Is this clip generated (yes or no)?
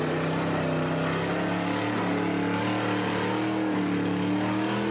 no